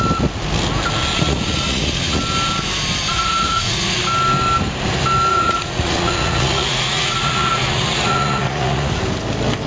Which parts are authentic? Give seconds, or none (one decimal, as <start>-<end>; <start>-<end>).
0.0-1.1; 2.2-3.1; 4.0-5.3; 9.0-9.7